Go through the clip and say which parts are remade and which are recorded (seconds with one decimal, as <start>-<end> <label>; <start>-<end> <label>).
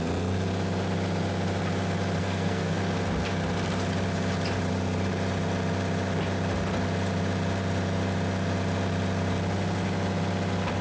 0.0-2.2 recorded; 2.2-2.8 remade; 2.8-10.8 recorded